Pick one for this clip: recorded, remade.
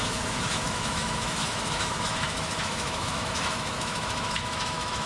remade